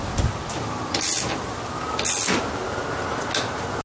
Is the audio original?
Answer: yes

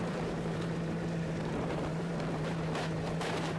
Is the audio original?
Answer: no